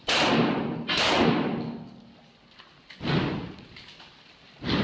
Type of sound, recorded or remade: recorded